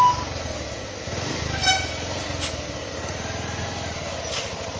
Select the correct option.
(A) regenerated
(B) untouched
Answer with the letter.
B